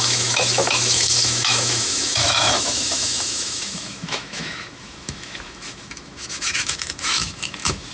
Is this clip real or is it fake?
fake